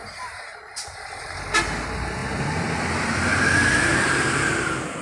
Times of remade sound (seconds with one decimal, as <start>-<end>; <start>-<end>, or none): 0.0-1.3; 2.2-3.3; 3.9-4.5